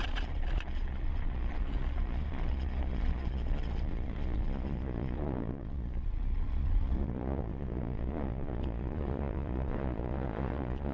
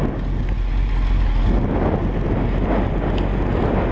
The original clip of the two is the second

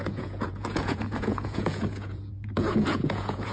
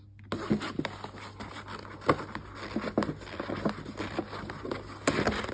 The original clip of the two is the second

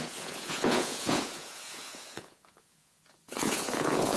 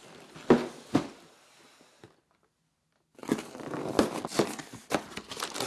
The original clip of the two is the second